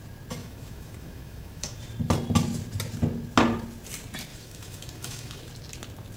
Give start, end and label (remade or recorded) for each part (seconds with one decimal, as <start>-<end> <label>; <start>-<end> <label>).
0.0-0.4 recorded; 0.4-1.8 remade; 1.8-4.3 recorded; 4.3-5.4 remade; 5.4-6.2 recorded

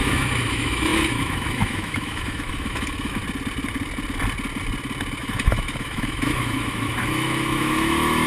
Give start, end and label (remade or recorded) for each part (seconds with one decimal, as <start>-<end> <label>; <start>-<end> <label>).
0.0-3.2 remade; 3.2-5.2 recorded; 5.2-8.3 remade

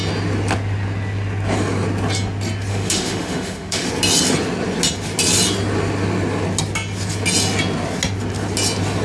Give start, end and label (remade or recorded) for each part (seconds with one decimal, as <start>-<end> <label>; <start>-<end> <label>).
0.0-2.7 recorded; 2.7-3.9 remade; 3.9-9.0 recorded

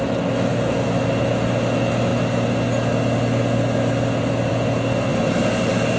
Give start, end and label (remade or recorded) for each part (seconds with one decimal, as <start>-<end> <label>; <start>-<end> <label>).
0.0-6.0 recorded

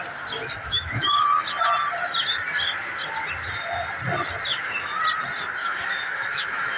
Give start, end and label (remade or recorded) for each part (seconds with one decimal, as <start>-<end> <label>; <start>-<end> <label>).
0.0-0.4 recorded; 0.4-1.3 remade; 1.3-4.5 recorded; 4.5-5.0 remade; 5.0-5.6 recorded; 5.6-6.8 remade